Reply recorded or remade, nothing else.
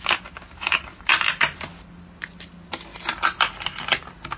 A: recorded